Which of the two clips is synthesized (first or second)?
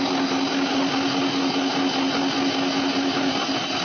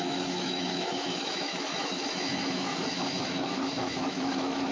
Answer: second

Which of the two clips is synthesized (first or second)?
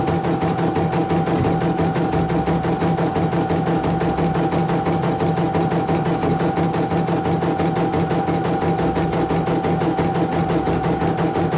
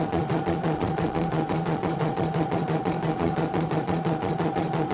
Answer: second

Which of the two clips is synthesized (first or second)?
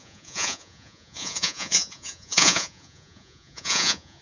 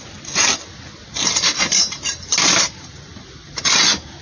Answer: first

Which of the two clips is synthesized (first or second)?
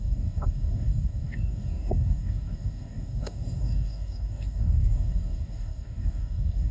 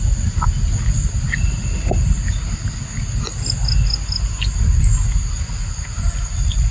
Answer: first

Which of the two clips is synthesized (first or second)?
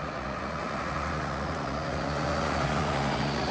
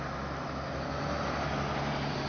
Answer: first